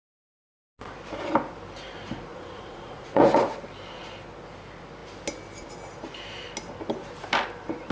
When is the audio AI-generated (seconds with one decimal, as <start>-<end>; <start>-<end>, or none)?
2.3-3.6